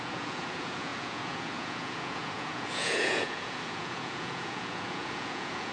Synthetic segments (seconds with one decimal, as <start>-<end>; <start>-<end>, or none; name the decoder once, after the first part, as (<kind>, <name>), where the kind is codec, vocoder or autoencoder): 0.0-5.7 (vocoder, Vocos)